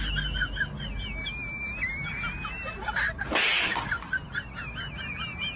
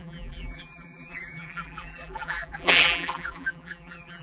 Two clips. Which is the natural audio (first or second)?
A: first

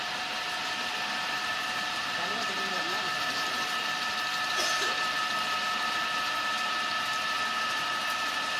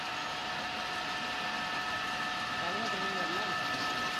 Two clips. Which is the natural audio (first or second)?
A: second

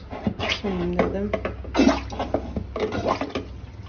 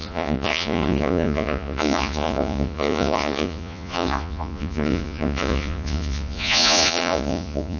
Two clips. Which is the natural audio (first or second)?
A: first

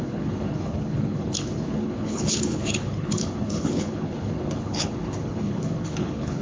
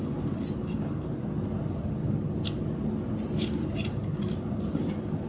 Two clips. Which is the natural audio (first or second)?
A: second